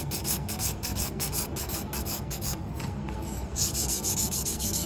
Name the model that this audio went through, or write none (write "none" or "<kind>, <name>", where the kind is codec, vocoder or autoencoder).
codec, SNAC